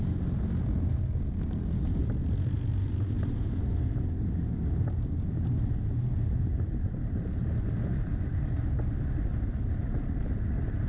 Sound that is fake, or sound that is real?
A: real